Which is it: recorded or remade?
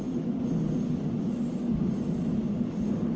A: recorded